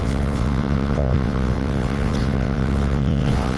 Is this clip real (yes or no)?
no